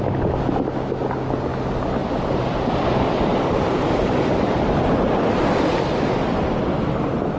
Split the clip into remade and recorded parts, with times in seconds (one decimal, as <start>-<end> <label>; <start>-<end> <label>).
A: 0.0-2.0 recorded; 2.0-2.8 remade; 2.8-3.3 recorded; 3.3-5.2 remade; 5.2-7.4 recorded